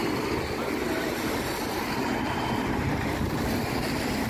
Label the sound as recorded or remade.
recorded